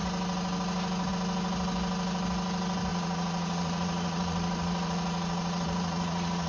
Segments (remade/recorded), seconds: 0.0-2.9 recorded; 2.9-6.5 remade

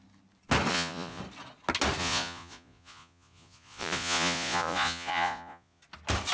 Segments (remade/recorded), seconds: 0.0-0.7 recorded; 0.7-1.2 remade; 1.2-2.0 recorded; 2.0-5.8 remade; 5.8-6.3 recorded

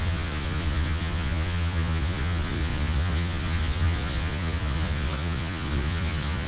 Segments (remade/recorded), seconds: 0.0-6.5 remade

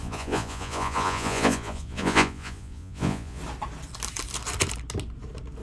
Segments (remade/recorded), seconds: 0.0-3.4 remade; 3.4-5.6 recorded

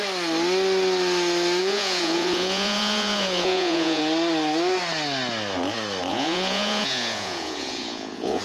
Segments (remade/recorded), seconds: 0.0-1.6 recorded; 1.6-4.0 remade; 4.0-6.1 recorded; 6.1-8.4 remade

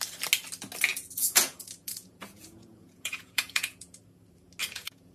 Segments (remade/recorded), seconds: 0.0-0.9 recorded; 0.9-4.0 remade; 4.0-4.6 recorded; 4.6-5.1 remade

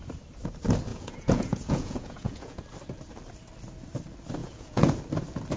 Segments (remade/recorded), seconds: 0.0-0.9 recorded; 0.9-2.6 remade; 2.6-4.4 recorded; 4.4-4.9 remade; 4.9-5.6 recorded

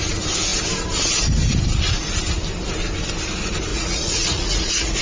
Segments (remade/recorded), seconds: 0.0-3.7 recorded; 3.7-5.0 remade